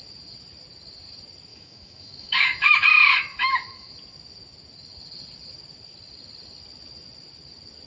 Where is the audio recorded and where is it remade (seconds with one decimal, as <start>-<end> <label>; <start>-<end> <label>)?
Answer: 0.0-1.5 recorded; 1.5-2.9 remade; 2.9-3.3 recorded; 3.3-3.9 remade; 3.9-7.9 recorded